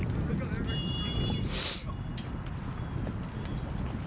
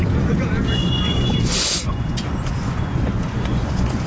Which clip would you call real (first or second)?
first